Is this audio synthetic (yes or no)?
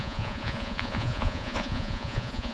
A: yes